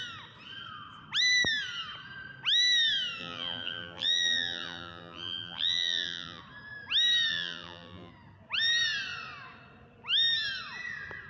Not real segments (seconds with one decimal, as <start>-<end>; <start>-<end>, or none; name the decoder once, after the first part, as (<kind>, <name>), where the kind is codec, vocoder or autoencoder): 3.2-6.4 (vocoder, BigVGAN v2); 7.3-8.1